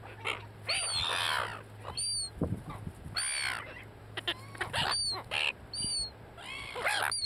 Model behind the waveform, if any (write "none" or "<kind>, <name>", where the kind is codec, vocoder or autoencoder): none